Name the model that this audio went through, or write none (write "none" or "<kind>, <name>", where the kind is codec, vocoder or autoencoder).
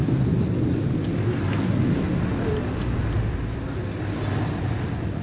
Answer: none